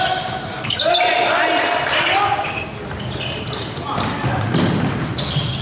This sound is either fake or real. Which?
real